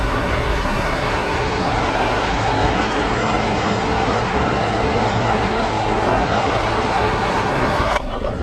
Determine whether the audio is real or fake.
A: fake